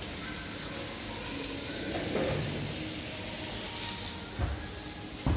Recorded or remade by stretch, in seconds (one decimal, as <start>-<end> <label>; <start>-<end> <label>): 0.0-5.4 recorded